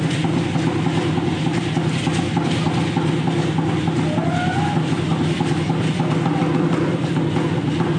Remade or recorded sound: recorded